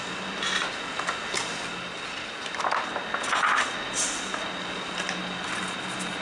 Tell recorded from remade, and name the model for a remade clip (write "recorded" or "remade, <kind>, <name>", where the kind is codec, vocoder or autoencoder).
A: recorded